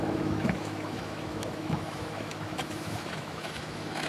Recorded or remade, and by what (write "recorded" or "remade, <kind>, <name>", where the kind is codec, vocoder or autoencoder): remade, autoencoder, DAC-VAE